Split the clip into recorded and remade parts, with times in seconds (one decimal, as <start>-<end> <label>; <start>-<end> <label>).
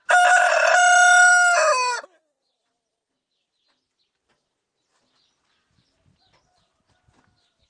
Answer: 0.0-7.7 recorded